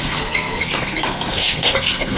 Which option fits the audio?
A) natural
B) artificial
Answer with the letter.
B